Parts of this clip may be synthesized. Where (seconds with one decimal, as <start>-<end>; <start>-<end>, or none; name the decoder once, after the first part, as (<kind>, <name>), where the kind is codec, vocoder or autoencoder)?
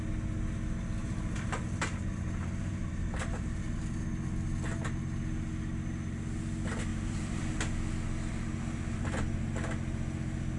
1.0-3.8 (vocoder, BigVGAN v2); 6.9-7.6; 8.3-9.5